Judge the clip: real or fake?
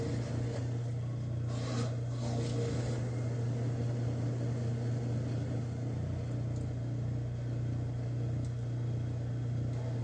real